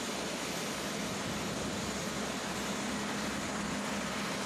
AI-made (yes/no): no